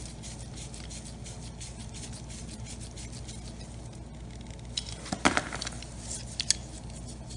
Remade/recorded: recorded